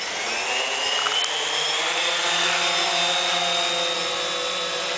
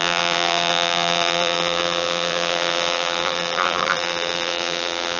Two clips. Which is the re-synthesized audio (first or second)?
second